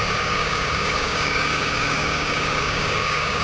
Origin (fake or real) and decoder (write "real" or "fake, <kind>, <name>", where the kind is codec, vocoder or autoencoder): fake, codec, DAC